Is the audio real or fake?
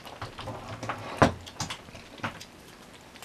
real